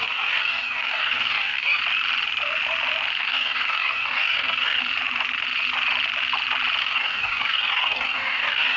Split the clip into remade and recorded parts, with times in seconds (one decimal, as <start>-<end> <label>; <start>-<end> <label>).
0.0-1.8 remade; 1.8-3.2 recorded; 3.2-4.8 remade; 4.8-6.8 recorded; 6.8-8.8 remade